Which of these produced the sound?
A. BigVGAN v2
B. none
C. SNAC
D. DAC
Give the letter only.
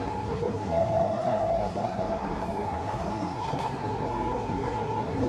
C